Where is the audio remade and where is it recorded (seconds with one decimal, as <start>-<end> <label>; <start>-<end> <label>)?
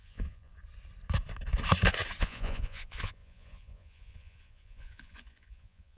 0.0-0.5 remade; 0.5-2.2 recorded; 2.2-6.0 remade